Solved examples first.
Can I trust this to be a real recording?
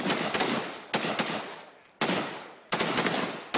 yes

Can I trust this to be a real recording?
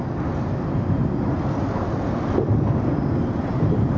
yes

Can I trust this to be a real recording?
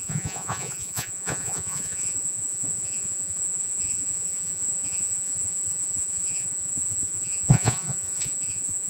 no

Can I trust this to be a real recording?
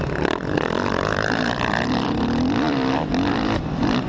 no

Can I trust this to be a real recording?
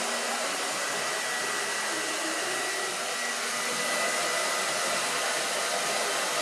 yes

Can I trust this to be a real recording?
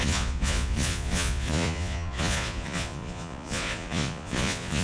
no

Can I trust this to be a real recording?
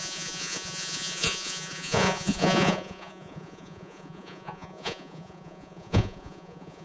no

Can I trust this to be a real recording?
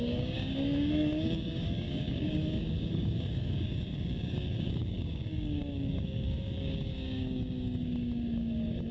no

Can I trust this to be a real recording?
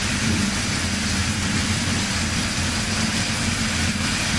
yes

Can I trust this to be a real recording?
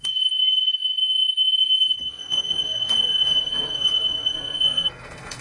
no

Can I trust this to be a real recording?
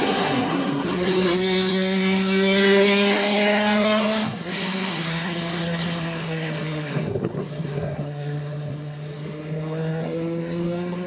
no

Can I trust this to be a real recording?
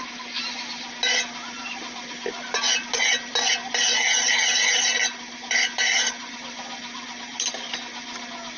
yes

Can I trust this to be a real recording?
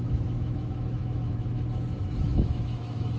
no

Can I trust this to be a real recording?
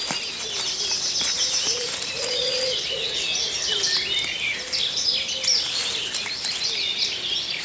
yes